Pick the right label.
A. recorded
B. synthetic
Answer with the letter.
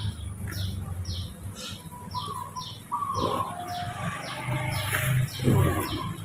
A